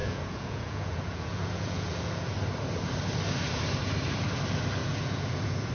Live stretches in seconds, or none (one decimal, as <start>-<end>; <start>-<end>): 2.3-4.8